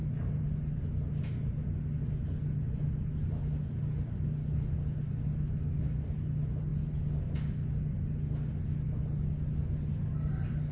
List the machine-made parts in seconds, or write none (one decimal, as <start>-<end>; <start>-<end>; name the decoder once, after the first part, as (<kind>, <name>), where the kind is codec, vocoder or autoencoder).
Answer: none